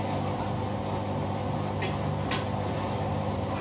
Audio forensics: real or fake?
real